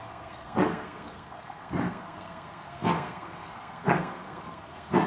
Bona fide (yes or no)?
no